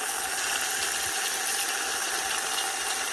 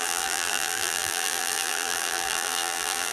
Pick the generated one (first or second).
second